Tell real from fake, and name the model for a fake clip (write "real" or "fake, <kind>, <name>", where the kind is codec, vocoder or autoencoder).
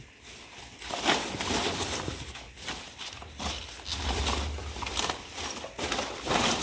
real